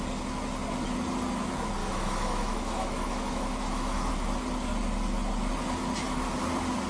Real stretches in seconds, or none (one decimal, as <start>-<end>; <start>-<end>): 0.0-1.8; 4.1-6.9